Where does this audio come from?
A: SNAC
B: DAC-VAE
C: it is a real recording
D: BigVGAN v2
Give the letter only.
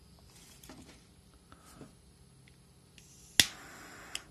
C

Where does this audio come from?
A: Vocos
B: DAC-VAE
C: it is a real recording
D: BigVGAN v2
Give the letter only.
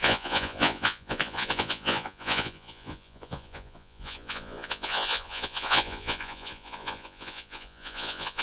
A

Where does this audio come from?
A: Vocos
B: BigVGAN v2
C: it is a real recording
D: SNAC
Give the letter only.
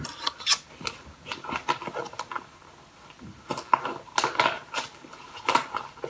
C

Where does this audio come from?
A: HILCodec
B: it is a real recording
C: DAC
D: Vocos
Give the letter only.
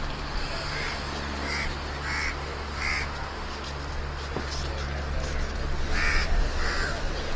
B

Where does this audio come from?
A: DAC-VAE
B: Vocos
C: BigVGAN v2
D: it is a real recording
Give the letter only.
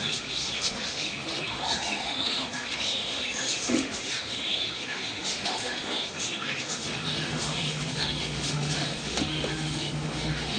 A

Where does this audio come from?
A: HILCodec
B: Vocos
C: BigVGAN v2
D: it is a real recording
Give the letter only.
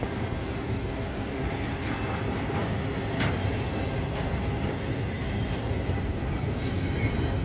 D